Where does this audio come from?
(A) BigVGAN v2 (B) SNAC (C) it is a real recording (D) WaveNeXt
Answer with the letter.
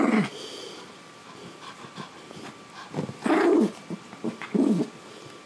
C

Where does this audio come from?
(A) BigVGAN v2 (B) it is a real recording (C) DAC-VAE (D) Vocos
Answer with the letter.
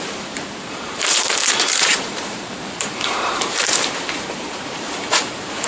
A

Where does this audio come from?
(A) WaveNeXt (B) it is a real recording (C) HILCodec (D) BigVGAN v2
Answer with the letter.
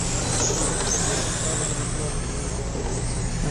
B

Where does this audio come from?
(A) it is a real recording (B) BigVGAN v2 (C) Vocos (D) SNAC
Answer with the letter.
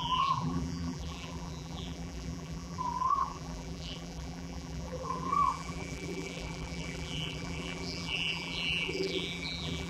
B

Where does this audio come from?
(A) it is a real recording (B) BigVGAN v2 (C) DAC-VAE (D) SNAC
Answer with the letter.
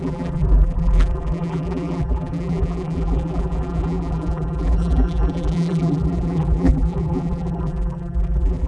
B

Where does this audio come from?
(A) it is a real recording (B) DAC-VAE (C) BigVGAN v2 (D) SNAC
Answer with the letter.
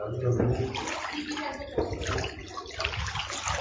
A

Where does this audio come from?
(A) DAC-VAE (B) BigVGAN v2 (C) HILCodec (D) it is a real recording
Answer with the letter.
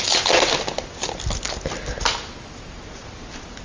D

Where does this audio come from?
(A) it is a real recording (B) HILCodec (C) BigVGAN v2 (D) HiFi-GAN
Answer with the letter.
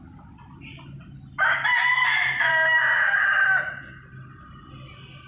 A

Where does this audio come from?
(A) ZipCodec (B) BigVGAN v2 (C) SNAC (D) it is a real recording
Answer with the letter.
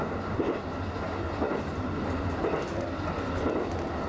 D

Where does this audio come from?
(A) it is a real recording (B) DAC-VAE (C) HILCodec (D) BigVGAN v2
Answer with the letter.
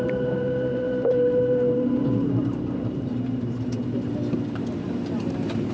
D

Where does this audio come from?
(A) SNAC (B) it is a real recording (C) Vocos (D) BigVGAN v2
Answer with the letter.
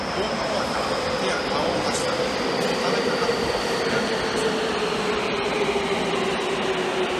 B